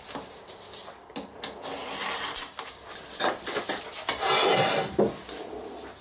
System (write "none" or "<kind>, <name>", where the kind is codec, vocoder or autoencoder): none